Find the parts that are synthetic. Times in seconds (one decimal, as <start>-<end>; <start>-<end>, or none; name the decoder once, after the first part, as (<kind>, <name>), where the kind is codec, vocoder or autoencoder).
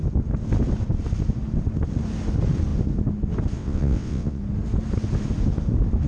3.6-4.4 (vocoder, WaveNeXt)